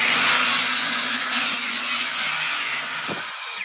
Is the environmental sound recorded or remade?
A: remade